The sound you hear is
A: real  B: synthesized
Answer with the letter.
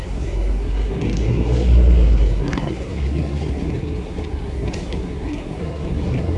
B